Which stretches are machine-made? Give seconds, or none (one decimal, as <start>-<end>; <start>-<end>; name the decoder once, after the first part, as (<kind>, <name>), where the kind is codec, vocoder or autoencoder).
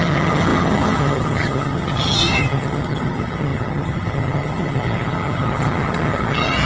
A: 0.0-6.7 (vocoder, HiFi-GAN)